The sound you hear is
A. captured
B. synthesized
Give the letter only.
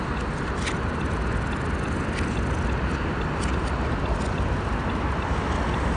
A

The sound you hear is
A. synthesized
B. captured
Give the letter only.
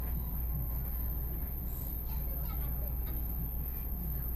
B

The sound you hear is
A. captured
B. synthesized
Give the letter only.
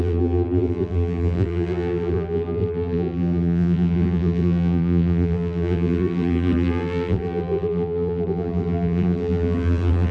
B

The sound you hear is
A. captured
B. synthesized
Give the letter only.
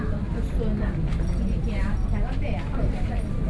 A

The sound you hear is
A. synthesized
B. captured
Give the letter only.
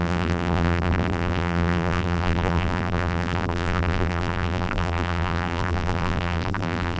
A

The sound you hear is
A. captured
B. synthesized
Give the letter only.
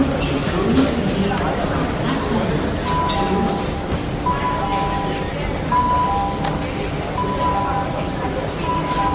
A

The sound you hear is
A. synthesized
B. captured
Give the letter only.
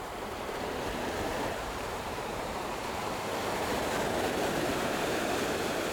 A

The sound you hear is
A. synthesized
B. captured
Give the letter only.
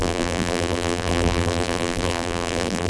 A